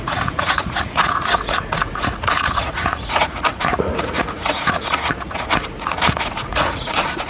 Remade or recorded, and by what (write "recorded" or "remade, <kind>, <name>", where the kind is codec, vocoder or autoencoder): remade, vocoder, Vocos